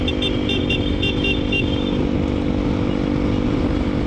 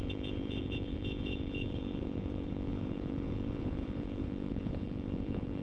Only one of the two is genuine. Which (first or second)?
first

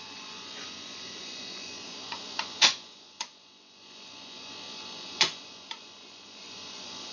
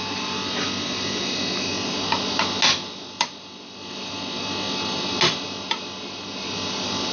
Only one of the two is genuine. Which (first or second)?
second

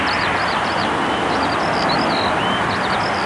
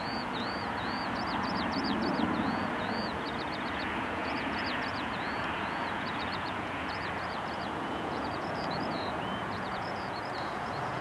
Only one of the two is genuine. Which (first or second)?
first